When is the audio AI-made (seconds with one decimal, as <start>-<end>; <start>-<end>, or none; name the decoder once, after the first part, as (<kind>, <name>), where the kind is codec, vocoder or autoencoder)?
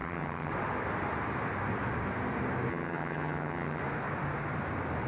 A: 0.0-0.5 (vocoder, HiFi-GAN); 2.7-3.8